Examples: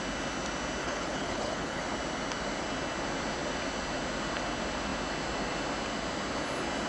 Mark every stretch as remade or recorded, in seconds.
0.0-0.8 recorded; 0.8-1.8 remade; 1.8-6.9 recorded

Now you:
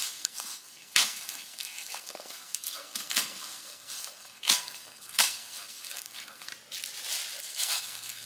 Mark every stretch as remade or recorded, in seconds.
0.0-6.5 remade; 6.5-7.4 recorded; 7.4-8.3 remade

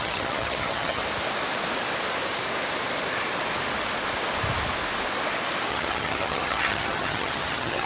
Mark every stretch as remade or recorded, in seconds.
0.0-1.0 remade; 1.0-5.7 recorded; 5.7-7.9 remade

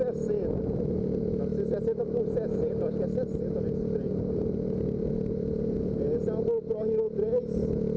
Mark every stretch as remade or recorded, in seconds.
0.0-8.0 recorded

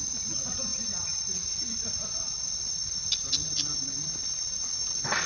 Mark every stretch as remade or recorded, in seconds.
0.0-5.3 recorded

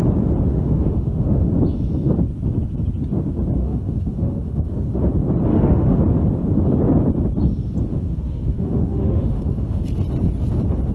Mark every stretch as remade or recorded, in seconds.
0.0-0.5 recorded; 0.5-1.5 remade; 1.5-3.6 recorded; 3.6-5.0 remade; 5.0-5.5 recorded; 5.5-6.0 remade; 6.0-7.9 recorded; 7.9-9.8 remade; 9.8-10.9 recorded

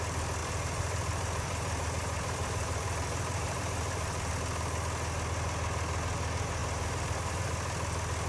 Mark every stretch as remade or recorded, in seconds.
0.0-0.4 recorded; 0.4-4.3 remade; 4.3-6.6 recorded; 6.6-7.5 remade; 7.5-8.3 recorded